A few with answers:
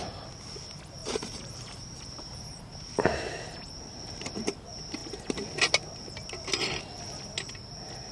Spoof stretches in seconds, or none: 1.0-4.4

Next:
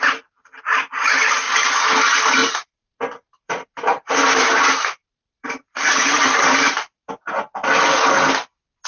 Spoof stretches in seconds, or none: 2.4-7.1